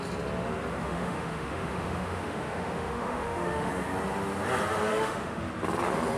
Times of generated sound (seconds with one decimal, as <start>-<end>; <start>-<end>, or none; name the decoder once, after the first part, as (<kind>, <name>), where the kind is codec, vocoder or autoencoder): 0.8-3.7 (autoencoder, DAC-VAE); 4.9-5.4